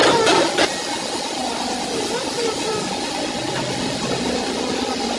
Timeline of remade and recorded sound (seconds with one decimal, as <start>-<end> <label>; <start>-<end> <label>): 0.0-5.2 recorded